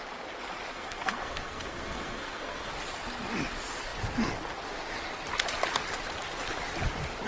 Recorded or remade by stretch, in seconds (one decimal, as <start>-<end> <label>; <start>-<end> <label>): 0.0-0.7 recorded; 0.7-2.7 remade; 2.7-7.3 recorded